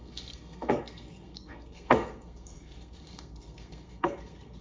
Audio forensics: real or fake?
fake